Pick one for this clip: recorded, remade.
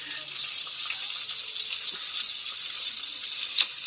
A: recorded